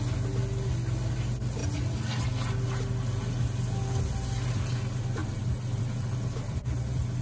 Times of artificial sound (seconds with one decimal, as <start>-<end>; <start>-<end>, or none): none